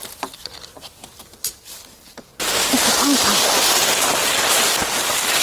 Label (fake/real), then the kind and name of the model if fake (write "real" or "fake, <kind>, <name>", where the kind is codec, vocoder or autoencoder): real